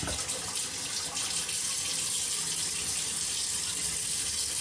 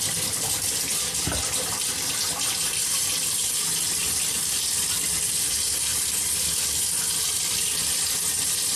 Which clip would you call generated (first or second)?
second